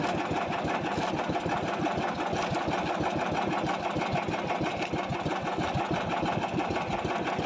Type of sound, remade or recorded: recorded